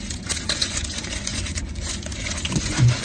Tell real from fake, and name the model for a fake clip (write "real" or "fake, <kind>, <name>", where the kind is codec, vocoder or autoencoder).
fake, vocoder, Vocos